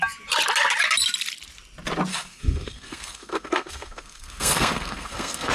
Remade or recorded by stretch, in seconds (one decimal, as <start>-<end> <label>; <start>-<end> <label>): 0.0-2.1 recorded; 2.1-5.5 remade